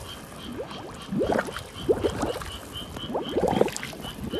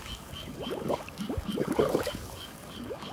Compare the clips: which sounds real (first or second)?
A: first